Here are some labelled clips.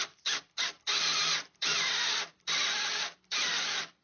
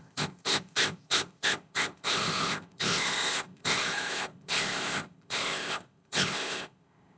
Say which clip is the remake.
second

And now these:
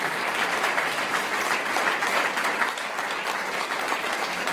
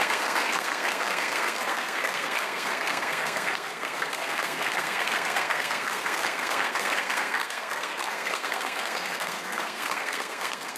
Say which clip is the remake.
second